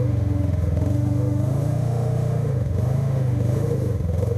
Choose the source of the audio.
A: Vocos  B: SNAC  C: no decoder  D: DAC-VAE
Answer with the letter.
D